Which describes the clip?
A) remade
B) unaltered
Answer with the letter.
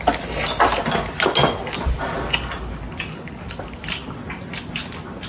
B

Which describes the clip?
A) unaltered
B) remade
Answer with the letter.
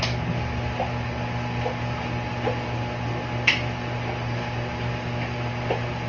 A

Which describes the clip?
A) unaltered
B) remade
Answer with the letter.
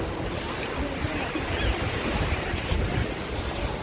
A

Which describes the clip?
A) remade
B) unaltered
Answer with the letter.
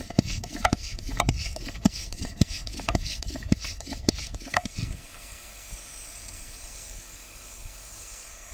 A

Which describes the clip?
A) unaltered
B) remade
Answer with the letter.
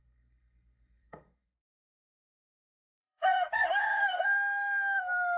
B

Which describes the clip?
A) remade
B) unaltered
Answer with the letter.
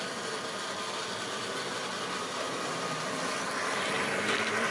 B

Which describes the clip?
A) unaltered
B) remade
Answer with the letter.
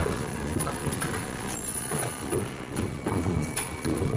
B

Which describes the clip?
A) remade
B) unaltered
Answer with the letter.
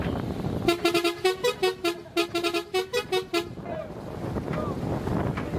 B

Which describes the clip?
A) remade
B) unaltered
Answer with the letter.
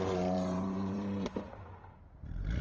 A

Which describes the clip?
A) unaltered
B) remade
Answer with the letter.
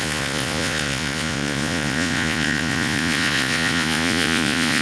B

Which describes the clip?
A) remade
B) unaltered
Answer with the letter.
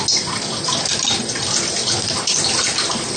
B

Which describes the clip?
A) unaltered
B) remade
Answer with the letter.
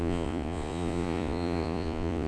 B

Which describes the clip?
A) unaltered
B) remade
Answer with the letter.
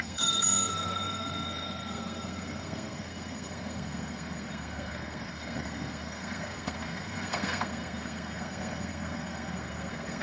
B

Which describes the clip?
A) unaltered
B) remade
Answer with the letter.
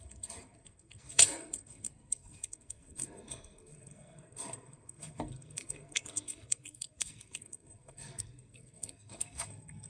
B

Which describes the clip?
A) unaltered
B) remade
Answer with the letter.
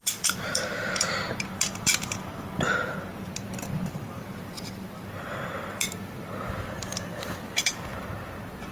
B